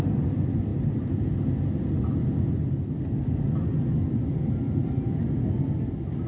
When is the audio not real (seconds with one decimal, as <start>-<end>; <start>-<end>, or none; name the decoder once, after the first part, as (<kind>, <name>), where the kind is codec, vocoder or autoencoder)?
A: none